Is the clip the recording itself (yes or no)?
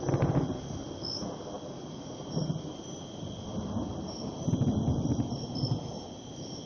yes